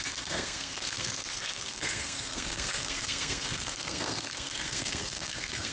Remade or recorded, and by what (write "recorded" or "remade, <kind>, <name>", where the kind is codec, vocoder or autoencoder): remade, codec, SNAC